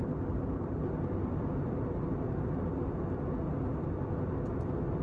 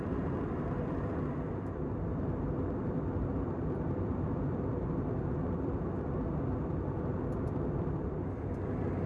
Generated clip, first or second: second